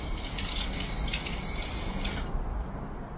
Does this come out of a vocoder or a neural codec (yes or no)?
no